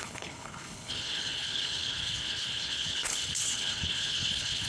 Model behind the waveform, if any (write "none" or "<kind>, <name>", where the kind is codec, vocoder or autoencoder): codec, HILCodec